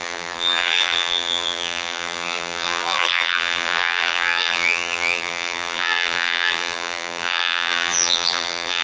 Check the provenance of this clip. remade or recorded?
remade